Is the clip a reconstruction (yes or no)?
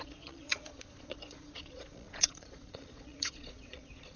yes